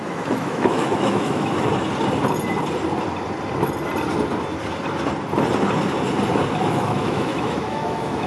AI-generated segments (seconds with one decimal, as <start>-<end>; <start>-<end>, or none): 0.0-1.7; 6.6-8.3